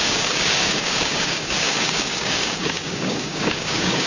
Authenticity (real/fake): fake